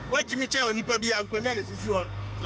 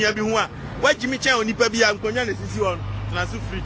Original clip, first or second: second